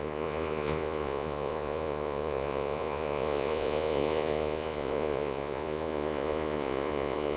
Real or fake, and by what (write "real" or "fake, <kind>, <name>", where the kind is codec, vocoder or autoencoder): fake, vocoder, Vocos